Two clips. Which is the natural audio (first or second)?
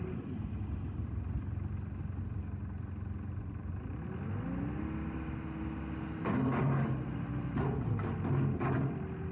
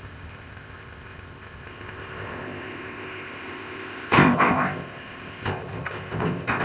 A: first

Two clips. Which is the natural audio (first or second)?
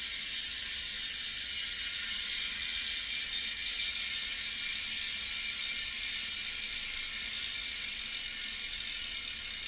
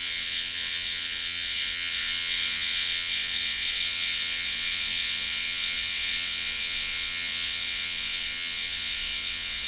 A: first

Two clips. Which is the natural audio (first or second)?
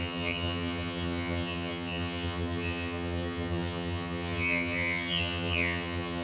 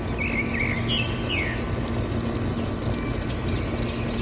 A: second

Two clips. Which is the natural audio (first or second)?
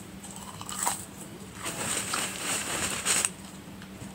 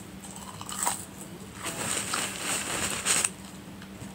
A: second